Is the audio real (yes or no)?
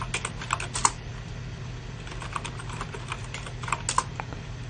yes